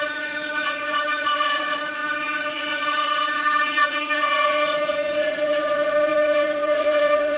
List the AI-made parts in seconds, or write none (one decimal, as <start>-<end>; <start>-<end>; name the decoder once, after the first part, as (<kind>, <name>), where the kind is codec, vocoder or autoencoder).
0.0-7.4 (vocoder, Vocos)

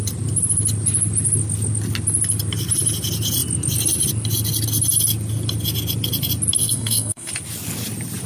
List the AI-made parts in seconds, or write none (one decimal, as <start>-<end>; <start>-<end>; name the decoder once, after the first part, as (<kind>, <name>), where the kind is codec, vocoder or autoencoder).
6.6-7.3 (codec, SNAC)

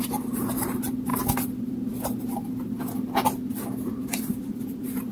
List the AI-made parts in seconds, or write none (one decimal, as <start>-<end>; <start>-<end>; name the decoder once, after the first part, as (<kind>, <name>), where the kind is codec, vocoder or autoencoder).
none

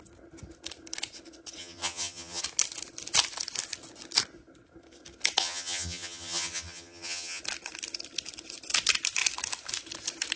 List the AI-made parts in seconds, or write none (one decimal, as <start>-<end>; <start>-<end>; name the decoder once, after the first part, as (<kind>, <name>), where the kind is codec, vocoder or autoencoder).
1.6-2.4 (vocoder, HiFi-GAN); 5.4-7.4